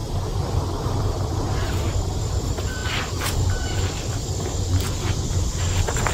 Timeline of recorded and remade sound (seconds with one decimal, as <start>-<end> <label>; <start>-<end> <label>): 0.0-6.1 recorded